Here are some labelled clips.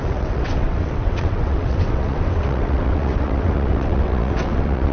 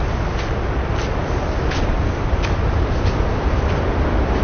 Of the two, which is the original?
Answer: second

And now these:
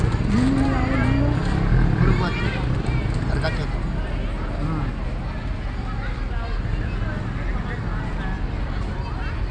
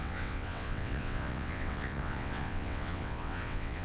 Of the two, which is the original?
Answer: first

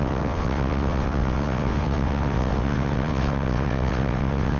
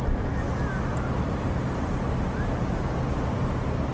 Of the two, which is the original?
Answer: second